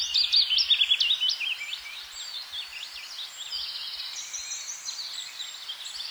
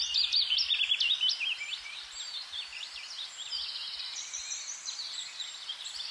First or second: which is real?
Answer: first